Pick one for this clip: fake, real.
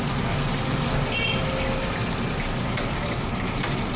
real